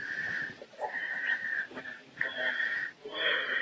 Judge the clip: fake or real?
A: fake